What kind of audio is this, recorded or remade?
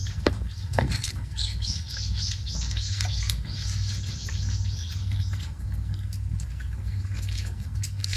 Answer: remade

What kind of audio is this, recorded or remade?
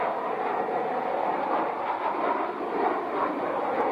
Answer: recorded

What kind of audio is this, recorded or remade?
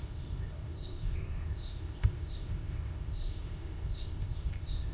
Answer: remade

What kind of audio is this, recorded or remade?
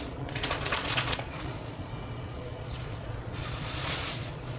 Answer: remade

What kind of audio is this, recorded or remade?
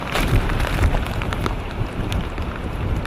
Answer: remade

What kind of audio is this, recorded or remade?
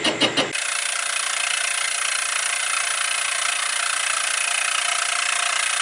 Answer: recorded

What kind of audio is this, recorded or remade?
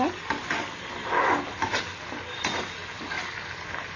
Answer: recorded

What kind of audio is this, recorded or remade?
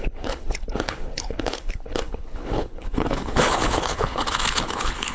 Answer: remade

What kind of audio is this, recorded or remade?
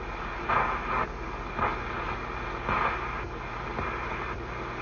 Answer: recorded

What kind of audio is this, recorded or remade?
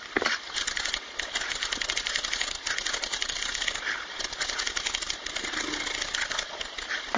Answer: recorded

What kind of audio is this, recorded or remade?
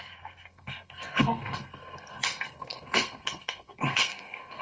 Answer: remade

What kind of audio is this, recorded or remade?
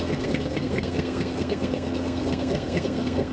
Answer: remade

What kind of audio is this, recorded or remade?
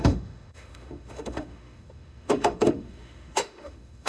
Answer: remade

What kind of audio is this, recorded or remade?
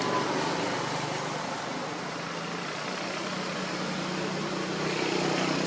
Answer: recorded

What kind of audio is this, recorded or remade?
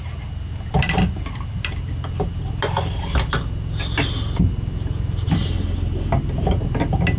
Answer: recorded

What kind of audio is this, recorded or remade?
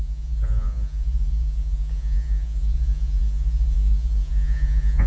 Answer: remade